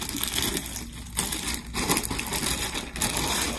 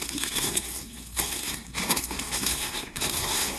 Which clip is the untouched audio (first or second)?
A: first